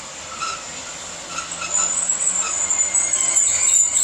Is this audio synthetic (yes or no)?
no